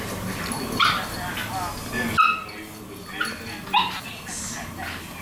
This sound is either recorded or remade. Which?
recorded